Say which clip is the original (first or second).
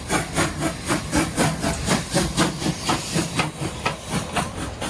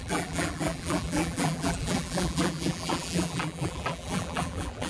first